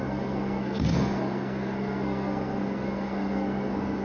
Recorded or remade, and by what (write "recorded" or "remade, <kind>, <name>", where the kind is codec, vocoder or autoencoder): remade, codec, SNAC